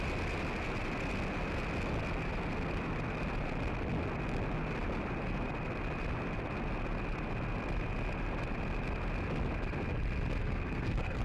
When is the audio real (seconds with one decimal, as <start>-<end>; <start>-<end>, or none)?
0.0-10.4

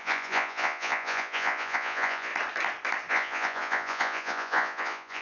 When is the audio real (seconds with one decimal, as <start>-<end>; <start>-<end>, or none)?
2.3-3.1